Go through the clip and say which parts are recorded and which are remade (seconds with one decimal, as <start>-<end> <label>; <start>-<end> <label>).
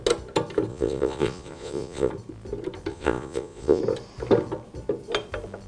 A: 0.0-0.7 recorded; 0.7-2.1 remade; 2.1-2.9 recorded; 2.9-3.8 remade; 3.8-5.7 recorded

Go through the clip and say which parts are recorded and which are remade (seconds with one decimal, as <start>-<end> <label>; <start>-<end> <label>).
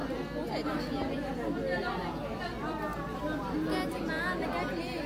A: 0.0-5.1 recorded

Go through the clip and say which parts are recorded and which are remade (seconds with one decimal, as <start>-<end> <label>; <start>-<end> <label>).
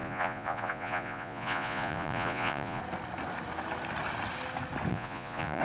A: 0.0-2.8 remade; 2.8-4.9 recorded; 4.9-5.6 remade